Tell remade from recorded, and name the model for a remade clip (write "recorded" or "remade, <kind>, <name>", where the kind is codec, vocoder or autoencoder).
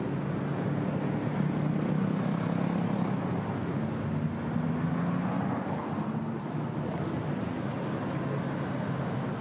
recorded